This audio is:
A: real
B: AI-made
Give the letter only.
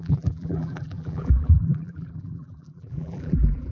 B